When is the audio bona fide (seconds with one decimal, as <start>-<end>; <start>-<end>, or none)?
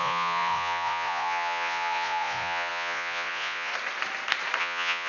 3.7-4.6